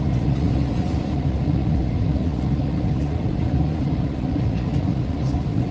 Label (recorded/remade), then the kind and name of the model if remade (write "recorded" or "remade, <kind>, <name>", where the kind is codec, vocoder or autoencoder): remade, vocoder, Vocos